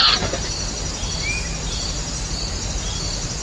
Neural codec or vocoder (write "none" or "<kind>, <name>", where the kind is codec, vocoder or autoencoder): none